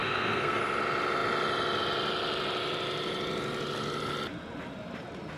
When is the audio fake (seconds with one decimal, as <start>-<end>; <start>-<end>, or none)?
0.0-0.6